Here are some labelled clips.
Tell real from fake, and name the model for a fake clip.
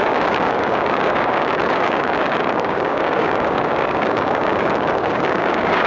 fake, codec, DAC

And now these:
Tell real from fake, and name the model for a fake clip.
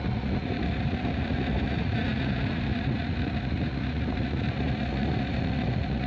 fake, vocoder, Vocos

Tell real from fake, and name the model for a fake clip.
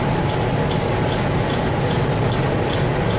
real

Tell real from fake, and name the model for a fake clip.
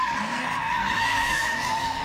fake, codec, SNAC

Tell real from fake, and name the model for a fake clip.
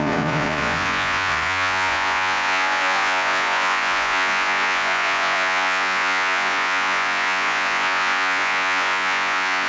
fake, vocoder, Vocos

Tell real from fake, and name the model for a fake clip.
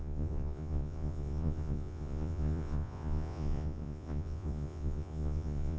fake, vocoder, Vocos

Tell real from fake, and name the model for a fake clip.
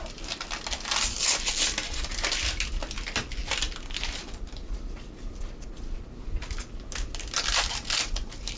real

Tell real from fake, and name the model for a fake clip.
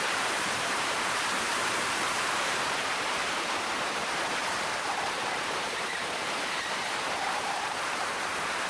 fake, vocoder, BigVGAN v2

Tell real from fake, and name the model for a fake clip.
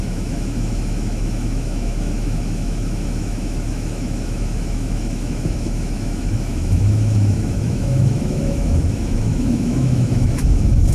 fake, autoencoder, DAC-VAE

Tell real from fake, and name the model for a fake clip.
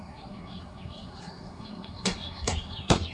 fake, codec, SNAC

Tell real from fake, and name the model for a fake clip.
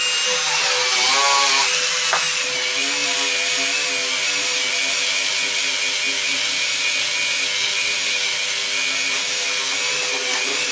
real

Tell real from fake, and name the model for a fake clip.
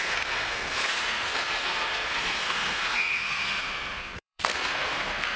fake, codec, SNAC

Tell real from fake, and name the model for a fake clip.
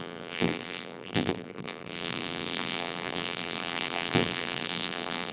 fake, vocoder, BigVGAN v2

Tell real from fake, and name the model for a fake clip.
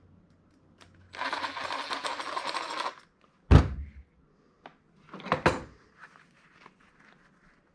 real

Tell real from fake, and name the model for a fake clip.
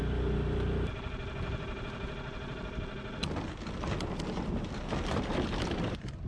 real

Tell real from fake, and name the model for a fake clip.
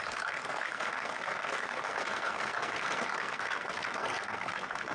fake, codec, SNAC